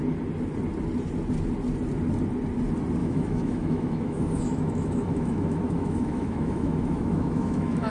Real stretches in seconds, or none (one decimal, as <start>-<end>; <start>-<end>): 0.0-3.0